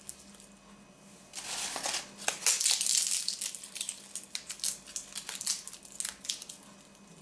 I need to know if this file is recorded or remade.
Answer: recorded